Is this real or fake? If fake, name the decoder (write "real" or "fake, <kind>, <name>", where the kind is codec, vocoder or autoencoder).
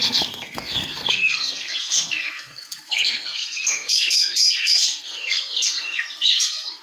fake, codec, SNAC